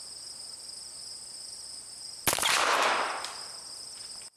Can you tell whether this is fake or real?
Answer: real